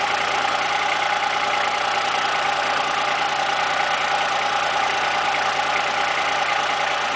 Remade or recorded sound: recorded